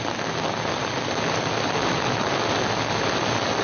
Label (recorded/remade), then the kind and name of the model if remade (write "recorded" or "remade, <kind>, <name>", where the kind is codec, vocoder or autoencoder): recorded